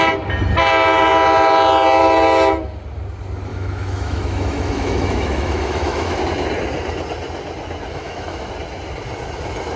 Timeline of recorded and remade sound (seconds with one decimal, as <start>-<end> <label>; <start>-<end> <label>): 0.0-3.5 recorded; 3.5-6.2 remade; 6.2-7.9 recorded; 7.9-8.5 remade; 8.5-9.8 recorded